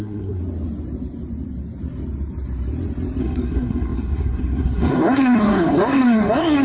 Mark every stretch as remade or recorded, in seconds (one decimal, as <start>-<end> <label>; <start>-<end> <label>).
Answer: 0.0-0.4 remade; 0.4-3.2 recorded; 3.2-6.6 remade